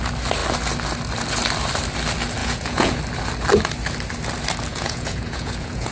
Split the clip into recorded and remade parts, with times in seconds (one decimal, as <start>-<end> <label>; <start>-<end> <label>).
0.0-2.4 recorded; 2.4-3.0 remade; 3.0-4.7 recorded; 4.7-5.9 remade